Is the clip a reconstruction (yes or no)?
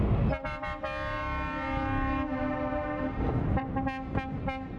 no